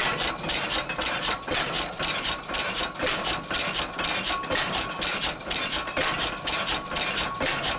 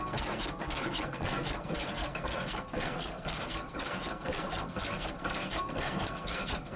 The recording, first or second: first